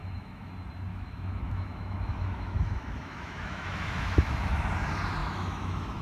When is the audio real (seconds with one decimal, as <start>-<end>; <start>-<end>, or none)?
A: 0.5-0.9; 4.5-5.2